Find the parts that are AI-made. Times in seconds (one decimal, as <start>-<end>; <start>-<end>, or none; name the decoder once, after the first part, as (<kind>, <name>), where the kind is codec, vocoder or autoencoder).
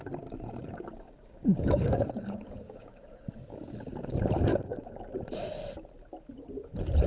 0.9-3.3 (codec, DAC); 4.5-5.1